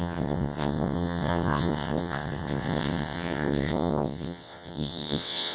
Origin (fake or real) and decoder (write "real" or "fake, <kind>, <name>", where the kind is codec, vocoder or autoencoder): fake, vocoder, WaveNeXt